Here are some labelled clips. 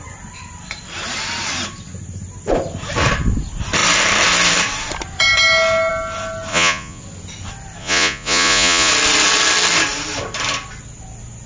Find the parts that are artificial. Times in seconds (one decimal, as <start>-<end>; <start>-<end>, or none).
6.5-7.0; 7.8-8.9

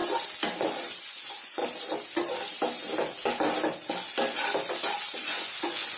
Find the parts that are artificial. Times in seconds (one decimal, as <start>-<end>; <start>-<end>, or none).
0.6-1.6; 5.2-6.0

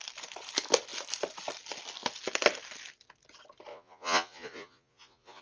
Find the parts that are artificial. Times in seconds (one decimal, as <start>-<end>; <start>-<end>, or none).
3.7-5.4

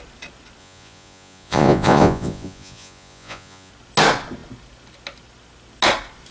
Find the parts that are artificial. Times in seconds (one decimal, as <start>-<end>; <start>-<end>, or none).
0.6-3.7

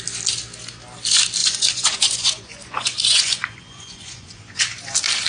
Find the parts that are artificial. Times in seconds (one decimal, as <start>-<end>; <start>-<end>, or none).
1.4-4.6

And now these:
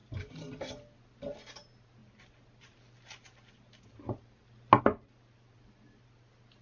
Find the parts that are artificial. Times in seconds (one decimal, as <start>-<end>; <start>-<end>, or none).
none

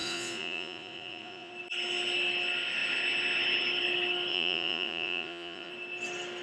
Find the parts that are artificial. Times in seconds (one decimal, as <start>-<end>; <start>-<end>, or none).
0.0-1.5; 4.3-5.7

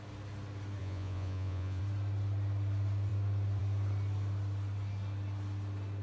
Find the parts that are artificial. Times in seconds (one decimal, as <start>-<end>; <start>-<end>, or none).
0.8-1.8